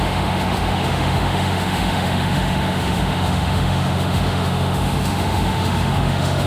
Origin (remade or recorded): remade